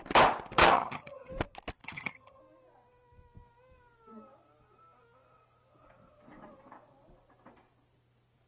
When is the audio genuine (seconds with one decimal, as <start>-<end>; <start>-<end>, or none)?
0.0-0.6; 1.3-1.8; 2.4-8.5